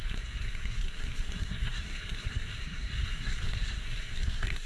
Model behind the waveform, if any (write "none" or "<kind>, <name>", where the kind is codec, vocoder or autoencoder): codec, SNAC